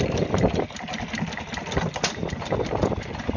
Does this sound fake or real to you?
real